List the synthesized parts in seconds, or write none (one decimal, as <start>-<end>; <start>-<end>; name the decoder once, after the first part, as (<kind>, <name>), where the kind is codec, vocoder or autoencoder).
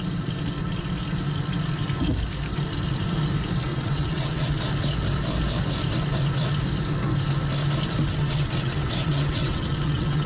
3.7-4.6 (vocoder, WaveNeXt); 8.1-10.3